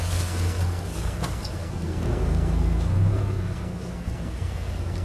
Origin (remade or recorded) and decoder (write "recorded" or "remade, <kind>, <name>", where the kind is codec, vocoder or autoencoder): remade, codec, SNAC